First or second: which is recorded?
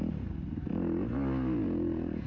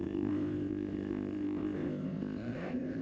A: first